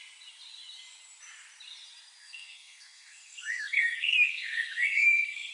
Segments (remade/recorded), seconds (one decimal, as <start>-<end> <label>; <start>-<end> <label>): 0.0-2.2 recorded; 2.2-5.5 remade